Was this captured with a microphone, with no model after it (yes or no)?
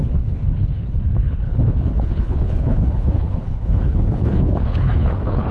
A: no